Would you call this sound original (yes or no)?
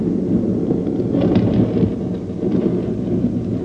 yes